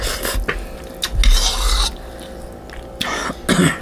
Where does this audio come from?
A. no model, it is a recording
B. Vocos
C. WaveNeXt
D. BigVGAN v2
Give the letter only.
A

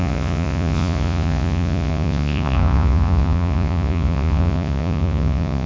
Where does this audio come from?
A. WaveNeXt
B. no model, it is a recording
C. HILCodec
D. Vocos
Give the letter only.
D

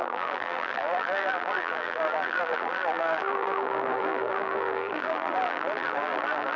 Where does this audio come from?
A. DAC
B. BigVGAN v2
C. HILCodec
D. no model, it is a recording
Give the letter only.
B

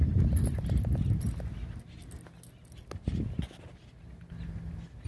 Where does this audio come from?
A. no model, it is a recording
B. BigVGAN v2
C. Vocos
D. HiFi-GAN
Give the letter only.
A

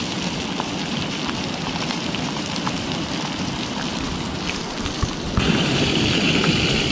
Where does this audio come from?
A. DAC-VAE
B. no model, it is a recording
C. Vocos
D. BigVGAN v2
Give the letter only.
D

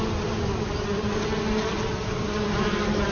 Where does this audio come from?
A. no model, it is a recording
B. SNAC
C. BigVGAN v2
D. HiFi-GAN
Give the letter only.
A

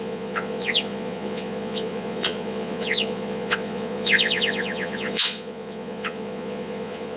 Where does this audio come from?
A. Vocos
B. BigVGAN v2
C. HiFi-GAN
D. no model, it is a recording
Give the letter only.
A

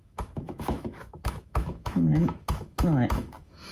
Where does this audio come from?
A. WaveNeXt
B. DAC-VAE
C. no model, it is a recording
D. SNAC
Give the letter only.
B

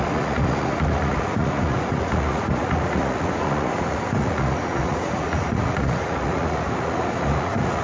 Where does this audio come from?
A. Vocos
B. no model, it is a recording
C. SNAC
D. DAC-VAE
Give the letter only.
A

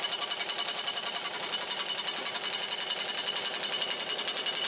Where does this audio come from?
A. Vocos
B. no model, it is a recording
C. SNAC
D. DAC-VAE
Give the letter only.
B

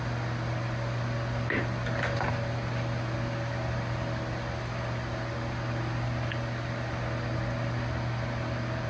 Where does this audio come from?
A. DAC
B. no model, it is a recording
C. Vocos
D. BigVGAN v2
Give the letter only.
B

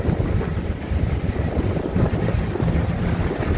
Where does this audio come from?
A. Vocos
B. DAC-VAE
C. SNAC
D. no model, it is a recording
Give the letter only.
D